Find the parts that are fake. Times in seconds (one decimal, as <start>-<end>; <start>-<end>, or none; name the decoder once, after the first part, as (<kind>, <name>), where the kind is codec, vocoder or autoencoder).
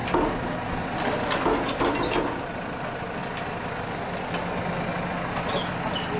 none